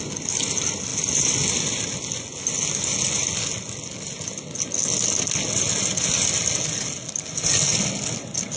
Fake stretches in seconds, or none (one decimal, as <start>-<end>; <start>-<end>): none